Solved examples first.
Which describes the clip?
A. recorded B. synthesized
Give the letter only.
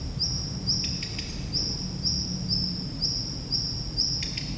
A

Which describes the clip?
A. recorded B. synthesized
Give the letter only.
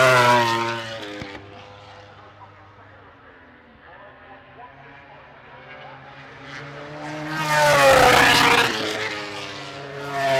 A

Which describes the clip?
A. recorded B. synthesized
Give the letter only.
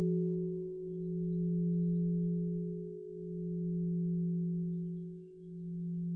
B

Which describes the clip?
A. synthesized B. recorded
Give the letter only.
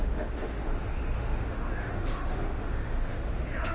A